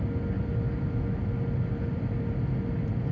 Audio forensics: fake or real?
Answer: real